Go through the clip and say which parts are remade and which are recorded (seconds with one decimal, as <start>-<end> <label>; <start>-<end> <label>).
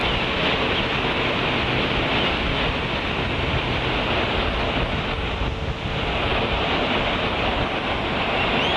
0.0-6.3 recorded; 6.3-8.3 remade; 8.3-8.8 recorded